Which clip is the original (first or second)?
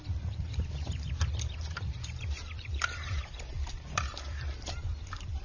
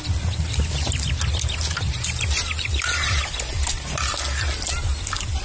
second